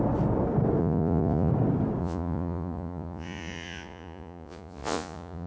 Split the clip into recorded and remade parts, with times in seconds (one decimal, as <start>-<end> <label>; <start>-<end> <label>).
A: 0.0-0.8 recorded; 0.8-1.5 remade; 1.5-2.0 recorded; 2.0-5.5 remade